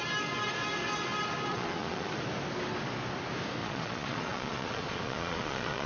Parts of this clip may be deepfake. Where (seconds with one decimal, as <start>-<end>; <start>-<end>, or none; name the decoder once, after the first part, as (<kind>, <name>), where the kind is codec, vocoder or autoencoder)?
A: 1.5-2.2 (vocoder, Vocos); 3.6-5.9